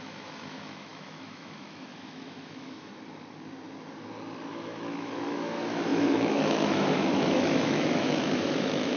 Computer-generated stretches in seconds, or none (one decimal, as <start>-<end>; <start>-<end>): 0.0-2.9; 4.5-9.0